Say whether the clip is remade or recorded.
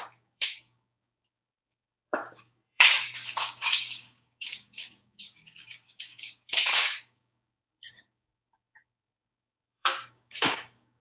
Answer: remade